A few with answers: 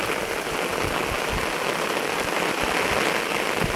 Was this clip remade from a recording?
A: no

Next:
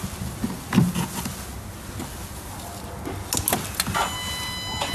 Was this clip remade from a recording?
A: no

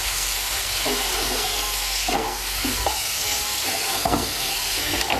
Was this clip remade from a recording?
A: yes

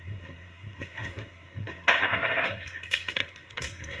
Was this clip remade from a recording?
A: yes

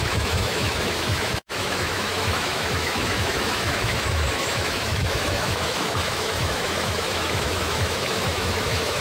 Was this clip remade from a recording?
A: yes